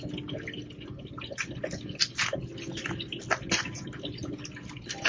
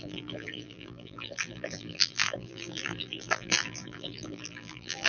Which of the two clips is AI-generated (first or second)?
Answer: second